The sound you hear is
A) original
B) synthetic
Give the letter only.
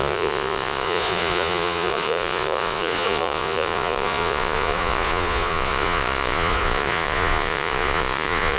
B